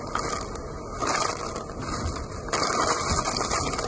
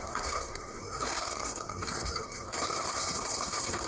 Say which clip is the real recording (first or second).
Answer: first